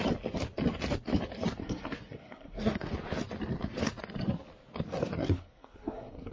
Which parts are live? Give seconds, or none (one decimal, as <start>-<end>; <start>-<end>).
0.0-1.6; 2.9-4.9